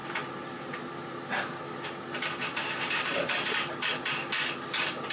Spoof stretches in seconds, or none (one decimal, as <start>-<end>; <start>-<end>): 2.6-4.0